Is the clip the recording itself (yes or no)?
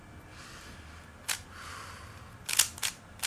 yes